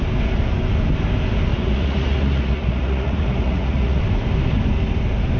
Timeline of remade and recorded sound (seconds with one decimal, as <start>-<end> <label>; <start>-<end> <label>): 0.0-1.5 recorded; 1.5-4.0 remade; 4.0-5.4 recorded